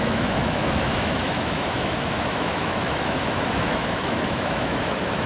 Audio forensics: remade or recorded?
remade